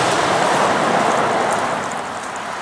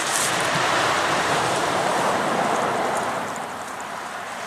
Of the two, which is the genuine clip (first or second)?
first